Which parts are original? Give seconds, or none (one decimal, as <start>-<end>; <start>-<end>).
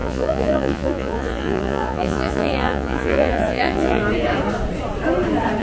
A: 4.0-5.6